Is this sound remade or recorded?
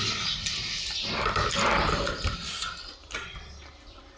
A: recorded